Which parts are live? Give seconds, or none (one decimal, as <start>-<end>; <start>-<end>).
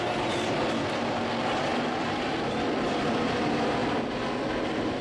0.0-1.7; 2.4-3.8; 4.5-5.0